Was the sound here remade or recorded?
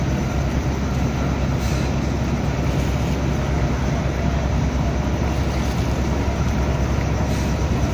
recorded